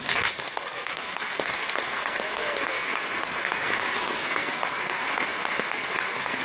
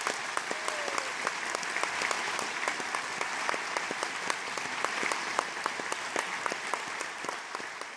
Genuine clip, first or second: second